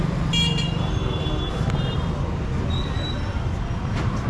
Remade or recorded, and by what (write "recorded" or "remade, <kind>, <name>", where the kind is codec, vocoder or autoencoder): recorded